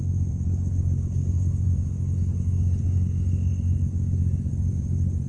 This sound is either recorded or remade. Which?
recorded